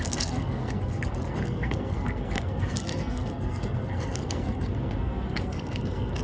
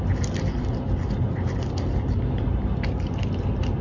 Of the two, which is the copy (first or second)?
first